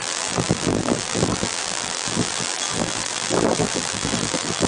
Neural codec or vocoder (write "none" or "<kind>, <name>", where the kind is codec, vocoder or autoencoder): vocoder, BigVGAN v2